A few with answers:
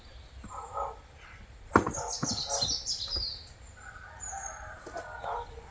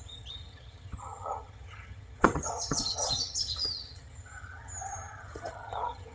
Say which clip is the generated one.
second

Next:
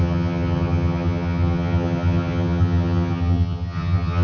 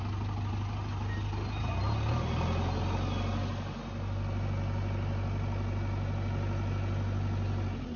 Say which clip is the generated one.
first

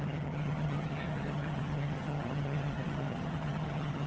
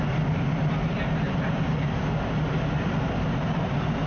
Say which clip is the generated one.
first